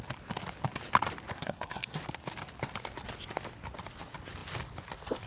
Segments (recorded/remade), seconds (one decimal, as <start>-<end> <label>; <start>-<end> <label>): 0.0-1.3 recorded; 1.3-2.0 remade; 2.0-5.3 recorded